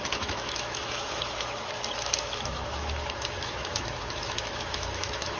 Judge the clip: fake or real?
fake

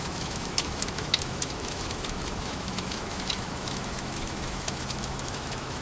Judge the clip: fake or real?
fake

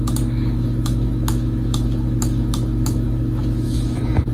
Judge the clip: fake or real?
fake